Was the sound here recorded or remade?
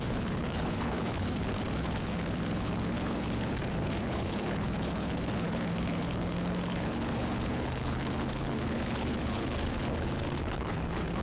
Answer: remade